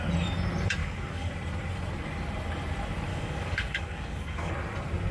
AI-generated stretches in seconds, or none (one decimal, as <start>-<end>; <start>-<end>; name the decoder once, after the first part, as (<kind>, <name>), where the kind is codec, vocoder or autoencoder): 0.8-1.3 (codec, DAC); 3.1-4.5